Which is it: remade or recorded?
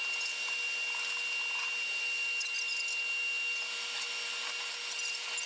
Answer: recorded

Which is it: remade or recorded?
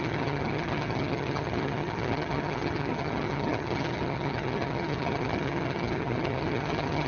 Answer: remade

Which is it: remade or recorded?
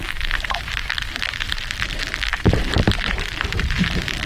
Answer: remade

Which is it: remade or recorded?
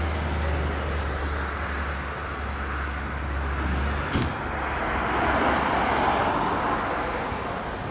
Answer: recorded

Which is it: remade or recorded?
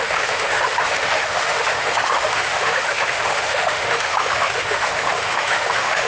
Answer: remade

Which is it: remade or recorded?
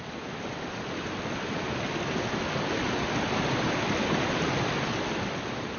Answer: recorded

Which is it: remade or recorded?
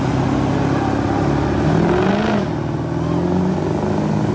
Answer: recorded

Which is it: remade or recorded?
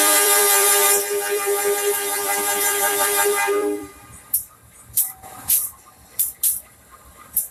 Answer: remade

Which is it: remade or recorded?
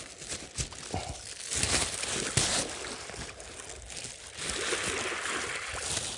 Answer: recorded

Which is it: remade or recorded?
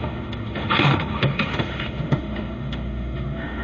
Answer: remade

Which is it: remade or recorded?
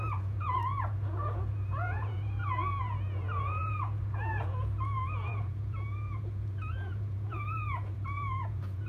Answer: remade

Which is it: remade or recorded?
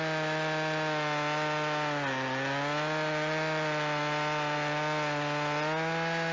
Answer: recorded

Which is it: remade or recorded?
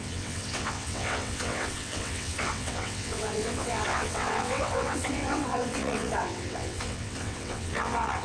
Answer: remade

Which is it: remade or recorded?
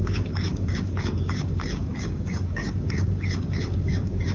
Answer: remade